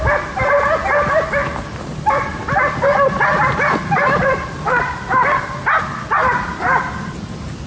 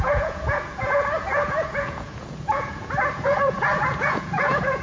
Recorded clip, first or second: first